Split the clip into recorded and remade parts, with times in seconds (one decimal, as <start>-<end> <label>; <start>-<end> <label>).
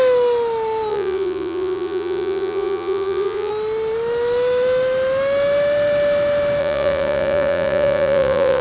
0.0-0.9 recorded; 0.9-3.5 remade; 3.5-6.6 recorded; 6.6-8.6 remade